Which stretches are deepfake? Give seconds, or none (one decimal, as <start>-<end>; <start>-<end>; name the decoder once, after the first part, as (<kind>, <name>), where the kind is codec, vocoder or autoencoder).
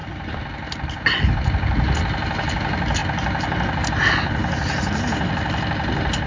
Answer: none